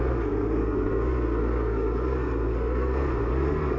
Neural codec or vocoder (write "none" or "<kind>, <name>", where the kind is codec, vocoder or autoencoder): codec, SNAC